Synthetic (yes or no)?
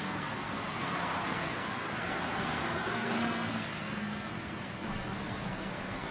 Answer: yes